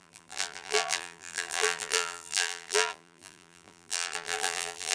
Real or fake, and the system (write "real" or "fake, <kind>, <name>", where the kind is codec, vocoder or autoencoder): fake, vocoder, BigVGAN v2